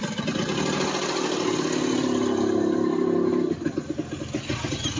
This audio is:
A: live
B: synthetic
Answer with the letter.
A